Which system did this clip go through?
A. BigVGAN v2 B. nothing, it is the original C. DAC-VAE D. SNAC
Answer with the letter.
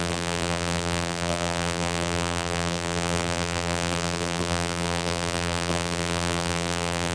A